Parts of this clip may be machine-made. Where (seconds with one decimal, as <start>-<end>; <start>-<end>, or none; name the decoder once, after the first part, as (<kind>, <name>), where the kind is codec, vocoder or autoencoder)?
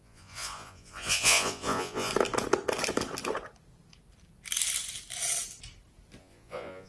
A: 0.0-2.1 (vocoder, Vocos); 6.2-6.9